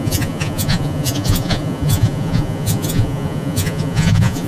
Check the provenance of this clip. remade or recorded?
remade